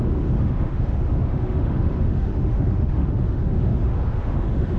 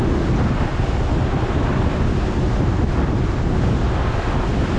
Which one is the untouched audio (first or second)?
second